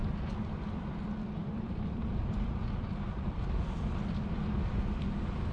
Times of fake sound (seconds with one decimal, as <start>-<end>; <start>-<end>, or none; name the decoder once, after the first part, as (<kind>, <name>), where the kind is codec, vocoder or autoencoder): 0.0-0.8 (vocoder, BigVGAN v2); 1.4-4.7